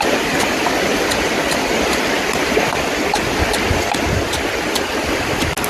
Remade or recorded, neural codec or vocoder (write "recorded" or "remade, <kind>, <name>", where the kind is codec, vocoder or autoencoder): recorded